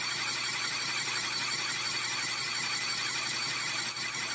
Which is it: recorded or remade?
recorded